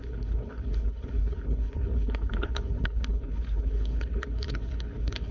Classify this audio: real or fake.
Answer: fake